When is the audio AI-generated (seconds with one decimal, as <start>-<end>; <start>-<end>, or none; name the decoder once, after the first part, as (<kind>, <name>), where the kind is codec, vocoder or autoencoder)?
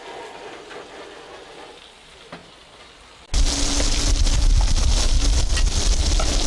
none